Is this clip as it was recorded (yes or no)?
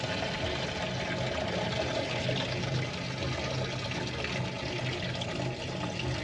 yes